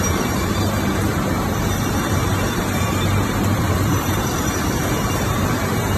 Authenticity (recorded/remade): remade